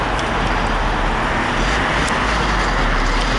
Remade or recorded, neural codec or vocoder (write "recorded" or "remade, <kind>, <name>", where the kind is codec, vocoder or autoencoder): recorded